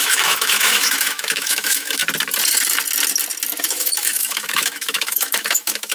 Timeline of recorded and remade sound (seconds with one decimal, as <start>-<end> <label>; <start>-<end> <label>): 0.0-2.0 remade; 2.0-3.6 recorded; 3.6-5.9 remade

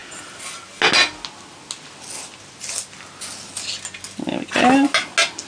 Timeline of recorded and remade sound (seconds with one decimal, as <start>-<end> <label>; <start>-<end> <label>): 0.0-5.5 recorded

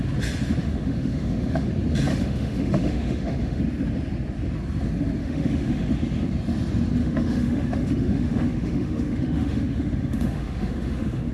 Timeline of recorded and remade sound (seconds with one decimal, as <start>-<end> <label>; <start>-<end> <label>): 0.0-0.6 recorded; 0.6-1.7 remade; 1.7-2.1 recorded; 2.1-3.6 remade; 3.6-5.2 recorded; 5.2-5.9 remade; 5.9-7.0 recorded; 7.0-11.3 remade

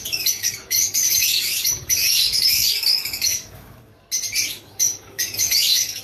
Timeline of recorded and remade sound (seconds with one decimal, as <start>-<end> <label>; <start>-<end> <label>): 0.0-3.9 remade; 3.9-4.5 recorded; 4.5-6.0 remade

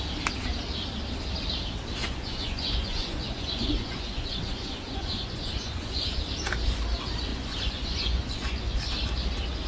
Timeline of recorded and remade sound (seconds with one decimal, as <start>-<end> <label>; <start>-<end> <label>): 0.0-2.0 recorded; 2.0-6.2 remade; 6.2-7.3 recorded; 7.3-8.8 remade; 8.8-9.7 recorded